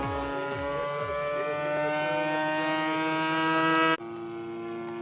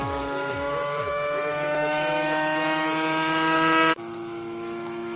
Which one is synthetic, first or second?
second